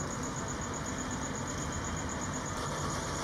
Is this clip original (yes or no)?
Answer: yes